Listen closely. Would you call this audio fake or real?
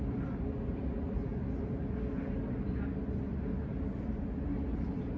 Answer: real